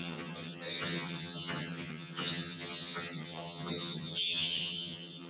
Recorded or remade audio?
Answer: remade